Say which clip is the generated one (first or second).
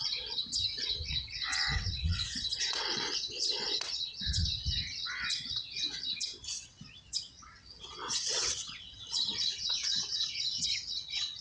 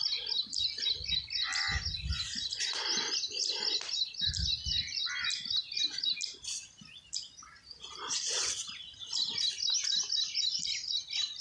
first